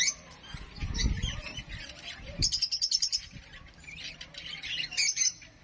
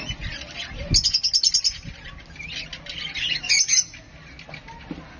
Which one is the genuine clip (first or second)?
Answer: second